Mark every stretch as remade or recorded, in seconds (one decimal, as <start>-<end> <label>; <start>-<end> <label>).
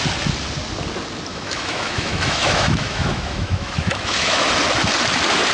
0.0-1.3 recorded; 1.3-4.5 remade; 4.5-5.5 recorded